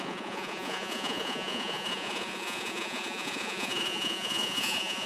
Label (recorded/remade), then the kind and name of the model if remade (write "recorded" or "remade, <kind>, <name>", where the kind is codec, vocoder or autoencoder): remade, vocoder, Vocos